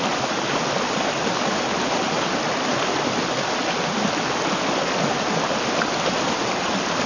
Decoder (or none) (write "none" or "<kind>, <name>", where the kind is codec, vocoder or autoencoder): vocoder, BigVGAN v2